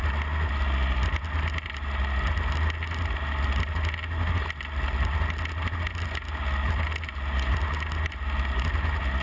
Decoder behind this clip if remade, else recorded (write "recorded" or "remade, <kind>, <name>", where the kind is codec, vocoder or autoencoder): recorded